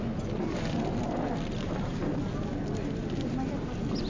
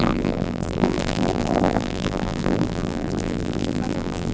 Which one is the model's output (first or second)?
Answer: second